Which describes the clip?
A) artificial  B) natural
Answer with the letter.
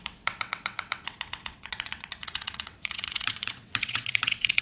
A